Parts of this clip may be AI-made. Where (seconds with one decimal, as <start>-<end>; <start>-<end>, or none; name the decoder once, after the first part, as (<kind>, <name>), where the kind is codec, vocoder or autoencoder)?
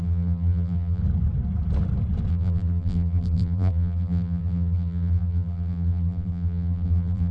0.0-1.0 (vocoder, BigVGAN v2); 2.3-7.3